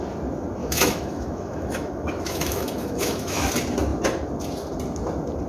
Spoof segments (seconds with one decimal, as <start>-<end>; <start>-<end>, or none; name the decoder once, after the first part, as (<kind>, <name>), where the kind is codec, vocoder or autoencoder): 0.6-3.5 (autoencoder, DAC-VAE)